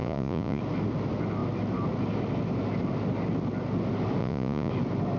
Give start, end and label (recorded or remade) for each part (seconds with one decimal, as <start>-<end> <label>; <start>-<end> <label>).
0.0-0.6 remade; 0.6-4.2 recorded; 4.2-4.7 remade; 4.7-5.2 recorded